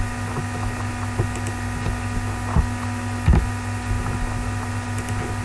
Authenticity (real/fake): real